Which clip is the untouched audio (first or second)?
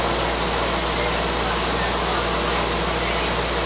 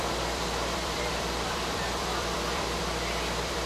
first